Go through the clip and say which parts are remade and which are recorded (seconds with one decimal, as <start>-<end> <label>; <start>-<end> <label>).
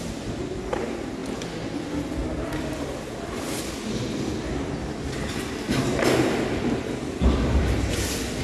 0.0-8.4 recorded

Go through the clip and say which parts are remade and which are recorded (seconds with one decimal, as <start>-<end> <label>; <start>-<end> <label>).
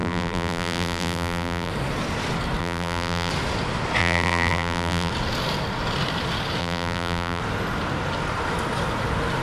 0.0-1.7 remade; 1.7-2.6 recorded; 2.6-3.3 remade; 3.3-4.0 recorded; 4.0-5.1 remade; 5.1-6.6 recorded; 6.6-7.4 remade; 7.4-9.4 recorded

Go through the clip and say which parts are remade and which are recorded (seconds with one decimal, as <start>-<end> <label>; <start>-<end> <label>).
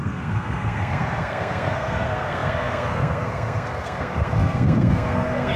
0.0-5.6 remade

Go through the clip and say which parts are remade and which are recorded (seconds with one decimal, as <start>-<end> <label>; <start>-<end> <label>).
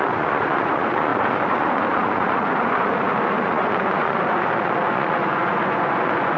0.0-6.4 remade